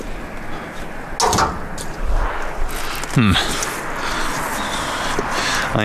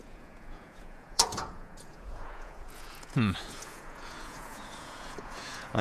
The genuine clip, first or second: first